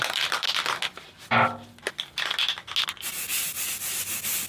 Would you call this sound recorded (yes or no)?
yes